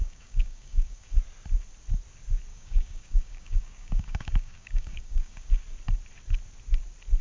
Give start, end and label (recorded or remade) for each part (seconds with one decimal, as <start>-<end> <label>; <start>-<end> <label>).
0.0-1.2 remade; 1.2-2.5 recorded; 2.5-5.5 remade; 5.5-7.2 recorded